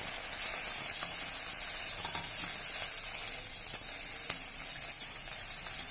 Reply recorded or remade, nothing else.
recorded